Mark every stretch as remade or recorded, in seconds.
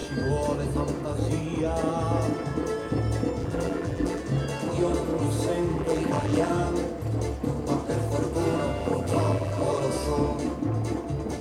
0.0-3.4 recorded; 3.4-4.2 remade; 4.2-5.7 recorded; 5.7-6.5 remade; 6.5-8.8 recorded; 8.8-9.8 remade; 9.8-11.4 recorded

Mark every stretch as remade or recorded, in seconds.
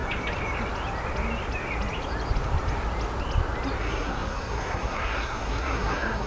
0.0-3.8 recorded; 3.8-6.3 remade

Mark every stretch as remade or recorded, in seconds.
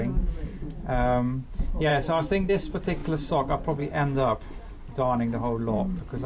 0.0-6.3 recorded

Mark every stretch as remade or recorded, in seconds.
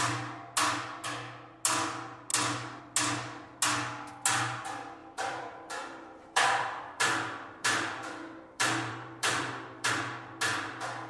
0.0-5.0 recorded; 5.0-9.9 remade; 9.9-11.1 recorded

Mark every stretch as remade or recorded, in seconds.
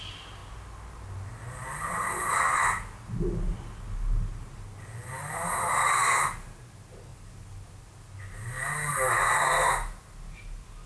0.0-10.9 recorded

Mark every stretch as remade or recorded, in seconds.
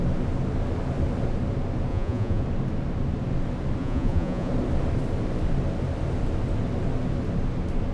0.0-1.9 recorded; 1.9-2.4 remade; 2.4-3.8 recorded; 3.8-4.5 remade; 4.5-7.9 recorded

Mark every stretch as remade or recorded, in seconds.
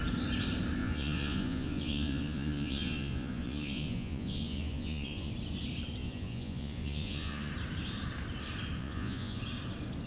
0.0-0.8 recorded; 0.8-5.3 remade; 5.3-6.0 recorded; 6.0-7.5 remade; 7.5-8.8 recorded; 8.8-9.4 remade; 9.4-10.1 recorded